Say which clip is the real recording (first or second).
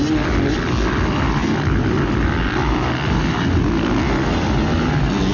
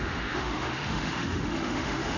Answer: first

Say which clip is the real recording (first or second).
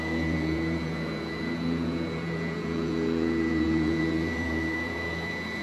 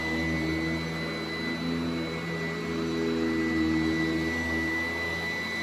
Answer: second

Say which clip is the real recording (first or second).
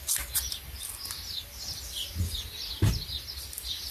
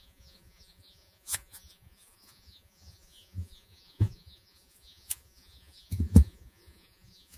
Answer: first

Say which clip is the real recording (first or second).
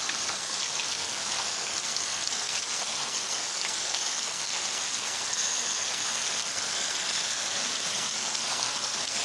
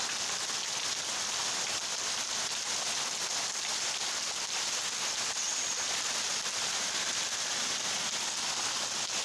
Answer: second